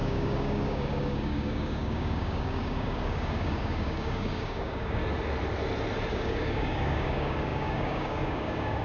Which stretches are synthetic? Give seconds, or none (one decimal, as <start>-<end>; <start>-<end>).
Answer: 0.0-5.0; 6.1-8.8